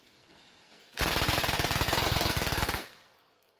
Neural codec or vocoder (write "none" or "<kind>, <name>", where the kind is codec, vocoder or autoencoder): codec, SNAC